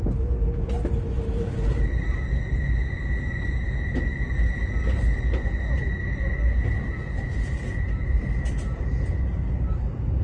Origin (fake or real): real